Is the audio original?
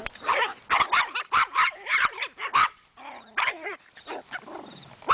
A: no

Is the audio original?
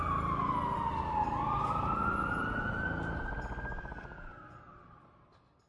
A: yes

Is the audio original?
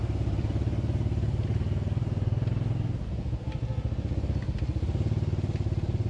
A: yes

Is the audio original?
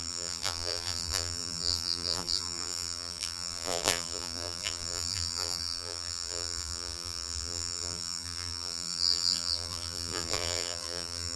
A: no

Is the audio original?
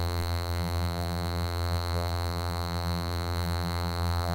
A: no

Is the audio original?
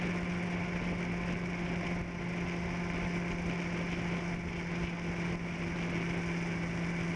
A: yes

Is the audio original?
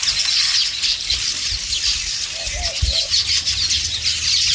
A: yes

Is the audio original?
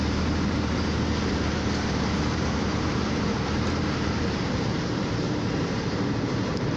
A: no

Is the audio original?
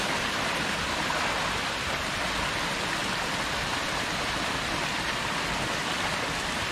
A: no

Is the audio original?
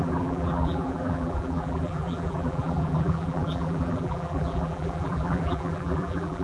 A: no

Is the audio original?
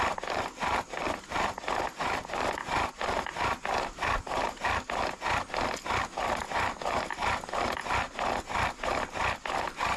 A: yes